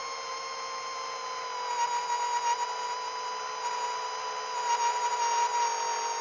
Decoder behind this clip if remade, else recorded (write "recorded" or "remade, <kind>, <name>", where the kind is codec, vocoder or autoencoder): recorded